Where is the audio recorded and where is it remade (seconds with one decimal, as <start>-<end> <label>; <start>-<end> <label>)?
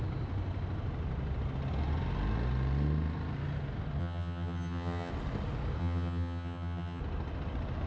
0.0-4.0 recorded; 4.0-5.1 remade; 5.1-5.8 recorded; 5.8-7.0 remade; 7.0-7.9 recorded